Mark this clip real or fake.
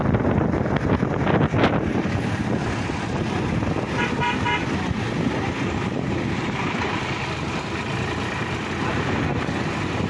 real